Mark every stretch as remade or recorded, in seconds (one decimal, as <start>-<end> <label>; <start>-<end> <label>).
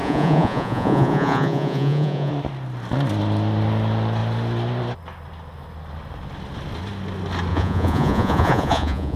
0.0-2.3 remade; 2.3-7.5 recorded; 7.5-9.2 remade